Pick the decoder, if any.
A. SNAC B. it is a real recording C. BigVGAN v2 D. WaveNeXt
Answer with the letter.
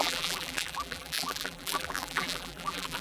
C